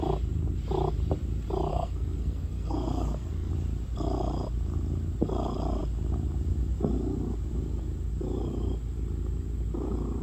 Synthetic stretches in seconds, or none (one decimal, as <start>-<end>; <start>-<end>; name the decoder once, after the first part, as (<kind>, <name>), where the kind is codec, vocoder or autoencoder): 1.7-3.5 (codec, SNAC)